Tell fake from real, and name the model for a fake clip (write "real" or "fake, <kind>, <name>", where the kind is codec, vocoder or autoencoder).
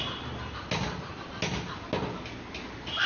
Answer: real